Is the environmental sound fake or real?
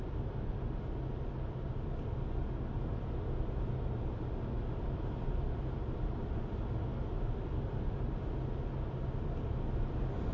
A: real